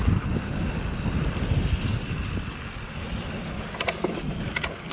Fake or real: real